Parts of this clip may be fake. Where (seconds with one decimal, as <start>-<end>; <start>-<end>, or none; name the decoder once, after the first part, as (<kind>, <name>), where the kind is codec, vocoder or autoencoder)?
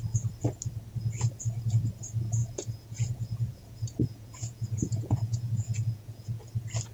2.4-6.5 (vocoder, Vocos)